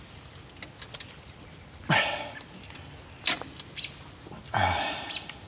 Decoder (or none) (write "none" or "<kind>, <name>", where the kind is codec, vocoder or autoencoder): none